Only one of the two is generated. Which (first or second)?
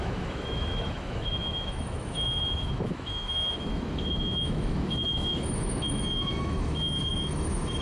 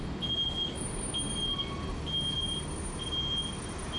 first